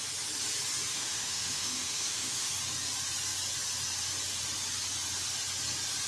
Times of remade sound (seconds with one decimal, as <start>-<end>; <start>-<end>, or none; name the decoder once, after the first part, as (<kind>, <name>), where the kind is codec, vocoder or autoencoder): 0.9-2.5 (autoencoder, DAC-VAE)